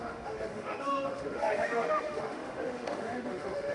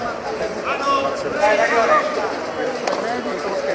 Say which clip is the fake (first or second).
first